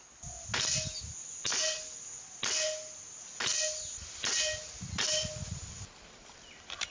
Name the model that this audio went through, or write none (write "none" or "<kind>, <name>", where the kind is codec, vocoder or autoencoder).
none